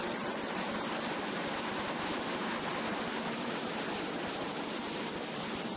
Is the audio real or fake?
real